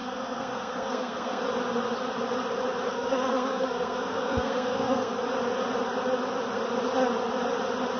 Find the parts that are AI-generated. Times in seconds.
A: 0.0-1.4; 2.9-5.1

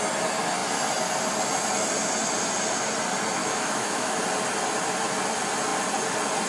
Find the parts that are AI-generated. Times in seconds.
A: 3.4-4.2

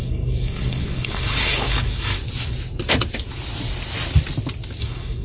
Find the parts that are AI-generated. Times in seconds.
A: 0.0-2.2; 4.8-5.2

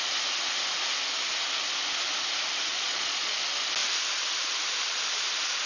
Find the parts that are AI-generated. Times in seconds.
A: 2.7-3.3

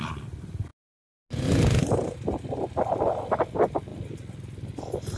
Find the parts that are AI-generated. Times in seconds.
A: none

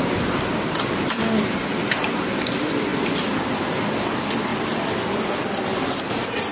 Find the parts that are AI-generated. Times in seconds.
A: none

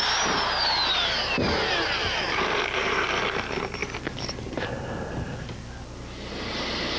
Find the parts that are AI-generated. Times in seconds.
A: none